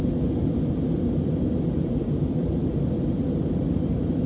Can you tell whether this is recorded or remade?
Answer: recorded